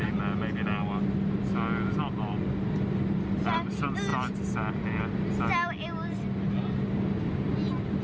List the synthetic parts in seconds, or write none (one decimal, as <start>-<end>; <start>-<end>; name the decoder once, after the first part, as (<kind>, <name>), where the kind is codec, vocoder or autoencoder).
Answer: none